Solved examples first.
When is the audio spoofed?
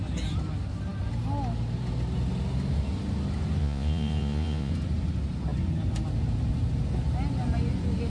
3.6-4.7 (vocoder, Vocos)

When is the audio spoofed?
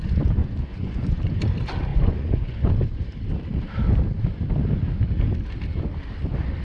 0.4-1.2 (vocoder, Vocos); 1.9-2.7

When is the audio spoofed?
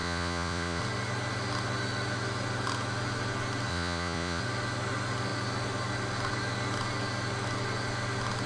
0.0-0.8 (vocoder, Vocos); 3.7-4.4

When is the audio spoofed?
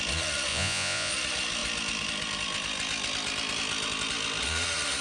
0.5-1.1 (vocoder, Vocos)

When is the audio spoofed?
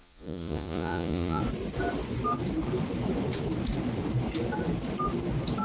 0.0-1.4 (vocoder, Vocos)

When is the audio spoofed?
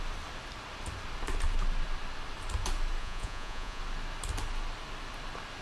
3.0-3.8 (vocoder, Vocos)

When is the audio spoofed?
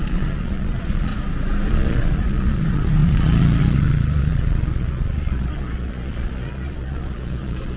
0.0-1.1 (vocoder, Vocos); 1.7-7.8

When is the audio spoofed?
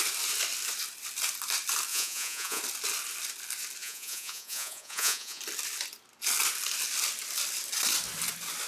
1.9-2.6 (vocoder, Vocos); 3.8-5.4